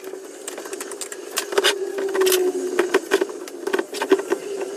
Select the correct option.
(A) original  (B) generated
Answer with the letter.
A